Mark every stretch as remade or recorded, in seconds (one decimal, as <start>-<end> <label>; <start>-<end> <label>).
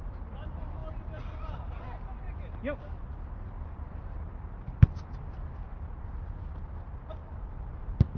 0.0-8.2 recorded